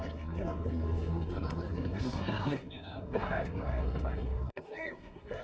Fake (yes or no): yes